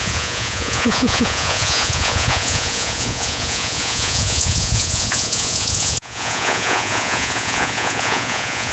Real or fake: fake